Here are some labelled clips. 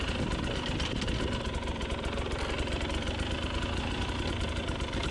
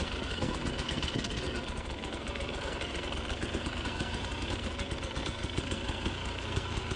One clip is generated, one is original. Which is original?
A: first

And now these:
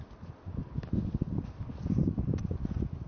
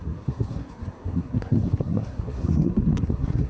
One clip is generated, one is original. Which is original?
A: first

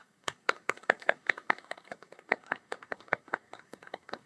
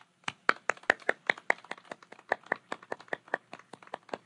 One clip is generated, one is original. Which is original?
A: second